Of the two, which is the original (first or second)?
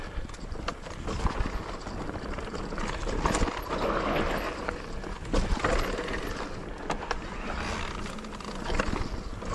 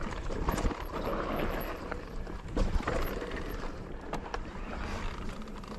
first